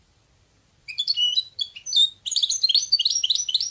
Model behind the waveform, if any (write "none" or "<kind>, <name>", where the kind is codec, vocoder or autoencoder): vocoder, BigVGAN v2